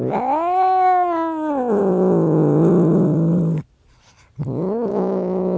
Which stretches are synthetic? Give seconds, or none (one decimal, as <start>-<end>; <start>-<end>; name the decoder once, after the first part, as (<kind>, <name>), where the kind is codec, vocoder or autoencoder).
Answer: 4.9-5.6 (codec, DAC)